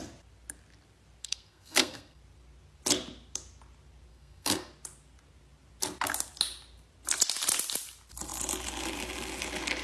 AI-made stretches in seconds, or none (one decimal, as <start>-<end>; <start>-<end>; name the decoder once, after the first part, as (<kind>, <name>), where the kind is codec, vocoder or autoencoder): 1.2-2.2 (codec, SNAC); 4.1-4.7